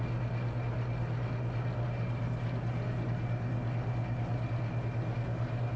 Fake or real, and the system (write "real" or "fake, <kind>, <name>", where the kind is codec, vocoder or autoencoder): real